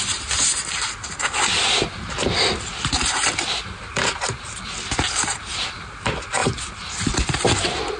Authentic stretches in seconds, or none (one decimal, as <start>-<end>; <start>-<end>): 0.0-8.0